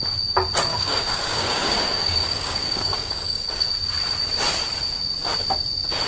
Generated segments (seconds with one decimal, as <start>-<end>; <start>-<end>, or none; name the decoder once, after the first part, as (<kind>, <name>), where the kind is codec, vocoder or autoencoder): 0.7-3.7 (codec, DAC)